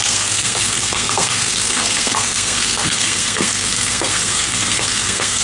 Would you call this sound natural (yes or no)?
no